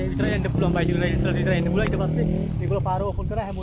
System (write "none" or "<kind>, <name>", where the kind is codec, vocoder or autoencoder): none